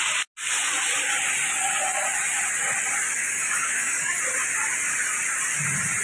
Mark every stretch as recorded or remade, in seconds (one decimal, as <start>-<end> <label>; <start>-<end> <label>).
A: 0.0-3.2 recorded; 3.2-4.2 remade; 4.2-6.0 recorded